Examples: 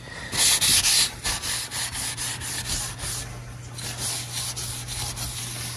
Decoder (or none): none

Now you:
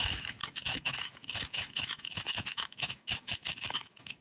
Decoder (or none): autoencoder, DAC-VAE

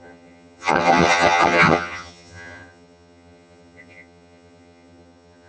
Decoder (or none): vocoder, HiFi-GAN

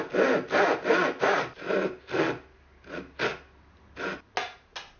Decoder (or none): none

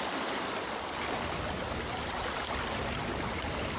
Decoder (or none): none